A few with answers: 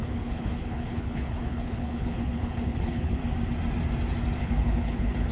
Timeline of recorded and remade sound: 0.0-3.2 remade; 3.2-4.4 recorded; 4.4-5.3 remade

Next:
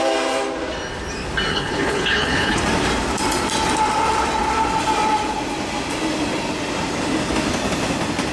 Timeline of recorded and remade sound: 0.0-1.5 recorded; 1.5-2.6 remade; 2.6-8.3 recorded

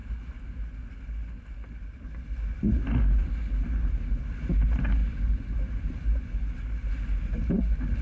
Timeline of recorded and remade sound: 0.0-8.0 recorded

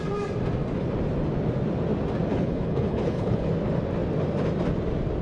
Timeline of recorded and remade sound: 0.0-2.3 recorded; 2.3-3.5 remade; 3.5-5.2 recorded